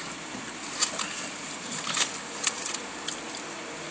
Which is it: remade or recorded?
recorded